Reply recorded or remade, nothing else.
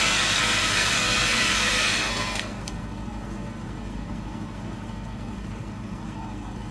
remade